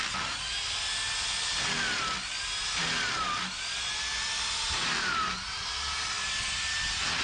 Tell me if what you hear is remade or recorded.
recorded